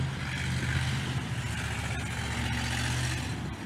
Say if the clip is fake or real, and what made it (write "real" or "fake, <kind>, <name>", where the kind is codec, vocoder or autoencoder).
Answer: real